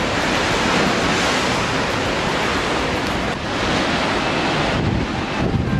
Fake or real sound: real